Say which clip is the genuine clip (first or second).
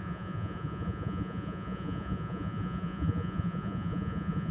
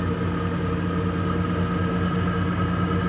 second